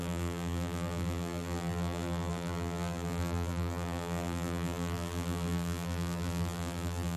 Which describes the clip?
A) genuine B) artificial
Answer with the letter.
B